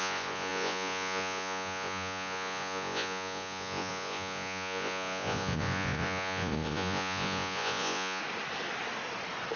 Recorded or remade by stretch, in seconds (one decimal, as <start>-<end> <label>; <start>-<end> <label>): 0.0-8.2 remade; 8.2-9.6 recorded